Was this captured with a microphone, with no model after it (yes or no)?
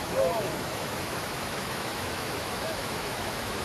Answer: no